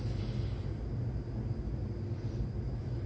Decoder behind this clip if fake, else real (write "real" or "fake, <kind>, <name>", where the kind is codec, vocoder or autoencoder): real